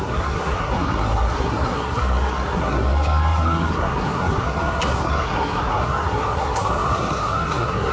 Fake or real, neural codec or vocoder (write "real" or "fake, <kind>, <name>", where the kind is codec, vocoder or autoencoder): fake, codec, SNAC